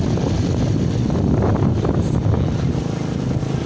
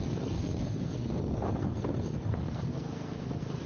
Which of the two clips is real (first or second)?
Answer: first